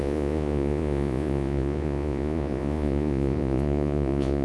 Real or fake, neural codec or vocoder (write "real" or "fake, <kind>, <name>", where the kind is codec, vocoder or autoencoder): fake, vocoder, Vocos